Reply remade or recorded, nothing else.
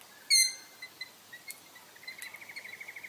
recorded